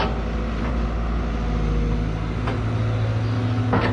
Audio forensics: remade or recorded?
recorded